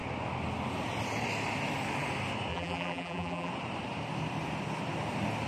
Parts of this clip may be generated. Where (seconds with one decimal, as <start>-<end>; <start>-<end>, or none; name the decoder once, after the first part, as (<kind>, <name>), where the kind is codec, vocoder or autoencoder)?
2.5-3.5 (vocoder, BigVGAN v2)